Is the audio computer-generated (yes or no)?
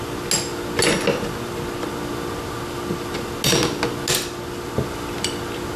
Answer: no